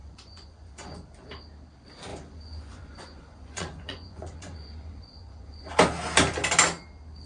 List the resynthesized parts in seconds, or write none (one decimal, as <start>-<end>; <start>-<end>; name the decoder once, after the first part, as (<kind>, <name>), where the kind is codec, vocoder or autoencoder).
0.0-1.1 (vocoder, Vocos); 2.1-5.7